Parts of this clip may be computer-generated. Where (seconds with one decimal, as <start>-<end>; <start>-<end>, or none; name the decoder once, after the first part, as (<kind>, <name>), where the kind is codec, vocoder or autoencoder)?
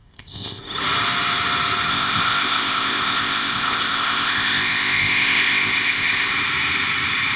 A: 0.0-0.6 (codec, ZipCodec); 1.9-6.3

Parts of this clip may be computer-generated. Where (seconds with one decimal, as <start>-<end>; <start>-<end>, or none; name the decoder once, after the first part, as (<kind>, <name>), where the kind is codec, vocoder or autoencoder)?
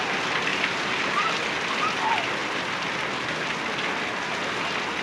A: 0.5-1.3 (vocoder, BigVGAN v2)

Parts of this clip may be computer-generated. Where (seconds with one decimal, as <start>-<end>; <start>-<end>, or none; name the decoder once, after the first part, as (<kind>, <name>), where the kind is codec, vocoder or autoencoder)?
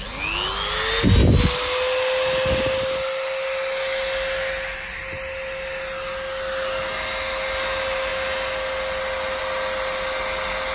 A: none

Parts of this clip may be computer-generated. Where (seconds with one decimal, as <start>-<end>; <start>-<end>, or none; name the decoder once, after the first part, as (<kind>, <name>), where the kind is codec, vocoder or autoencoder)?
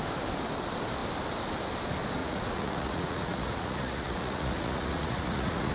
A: 2.2-5.7 (vocoder, Vocos)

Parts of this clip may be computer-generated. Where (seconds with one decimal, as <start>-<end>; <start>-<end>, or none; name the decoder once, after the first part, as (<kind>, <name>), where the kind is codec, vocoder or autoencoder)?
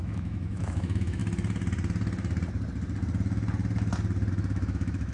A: 0.0-1.2 (autoencoder, DAC-VAE); 4.3-5.1